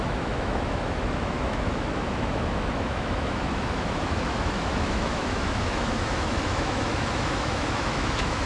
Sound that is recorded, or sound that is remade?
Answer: remade